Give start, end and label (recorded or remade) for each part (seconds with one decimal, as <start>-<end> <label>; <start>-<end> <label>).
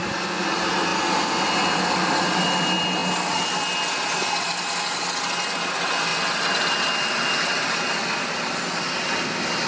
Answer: 0.0-9.7 recorded